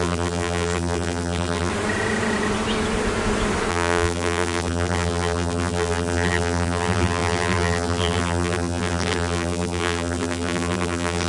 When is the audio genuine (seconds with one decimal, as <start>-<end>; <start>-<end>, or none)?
1.7-3.7